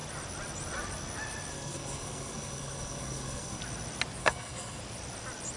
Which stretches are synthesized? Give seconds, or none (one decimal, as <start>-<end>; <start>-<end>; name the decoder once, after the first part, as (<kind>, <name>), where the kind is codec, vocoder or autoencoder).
1.5-3.6 (codec, SNAC); 4.2-4.8